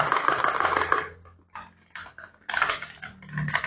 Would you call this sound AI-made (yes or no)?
no